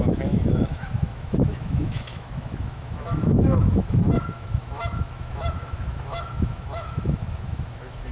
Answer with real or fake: fake